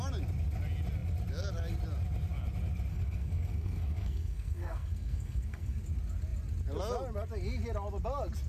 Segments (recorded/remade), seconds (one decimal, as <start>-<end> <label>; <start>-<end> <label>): 0.0-2.9 recorded; 2.9-5.8 remade; 5.8-8.5 recorded